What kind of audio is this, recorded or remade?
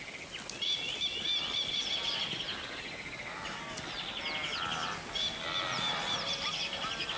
recorded